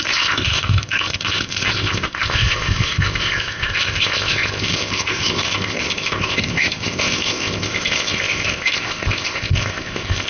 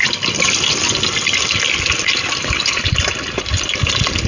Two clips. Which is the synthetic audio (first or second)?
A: first